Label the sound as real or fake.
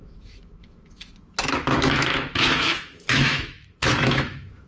fake